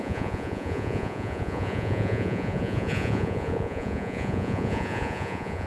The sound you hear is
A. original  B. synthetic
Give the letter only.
B